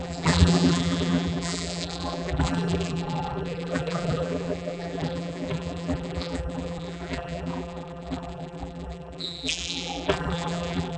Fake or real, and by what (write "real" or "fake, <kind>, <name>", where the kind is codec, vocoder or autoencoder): fake, vocoder, BigVGAN v2